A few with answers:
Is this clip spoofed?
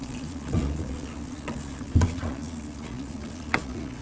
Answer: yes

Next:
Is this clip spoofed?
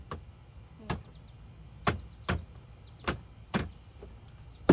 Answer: no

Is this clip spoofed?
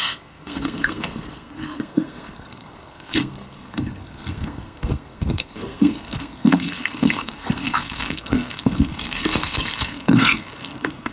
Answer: yes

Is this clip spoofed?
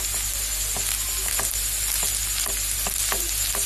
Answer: no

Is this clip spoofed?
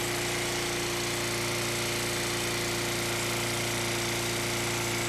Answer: no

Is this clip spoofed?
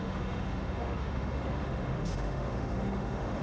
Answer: yes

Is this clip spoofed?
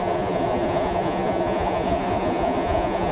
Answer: yes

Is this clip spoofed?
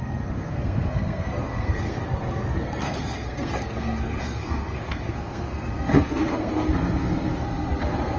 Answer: yes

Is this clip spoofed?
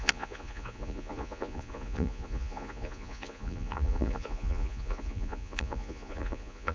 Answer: yes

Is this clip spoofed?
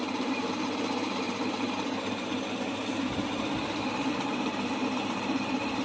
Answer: yes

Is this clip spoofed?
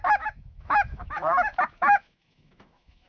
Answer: yes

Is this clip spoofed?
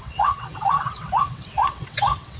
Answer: yes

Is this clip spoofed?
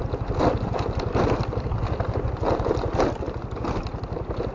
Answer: no